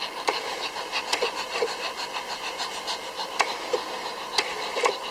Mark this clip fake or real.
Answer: real